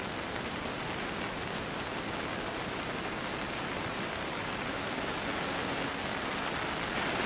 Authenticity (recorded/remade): recorded